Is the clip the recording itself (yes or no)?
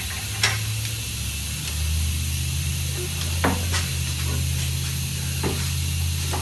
yes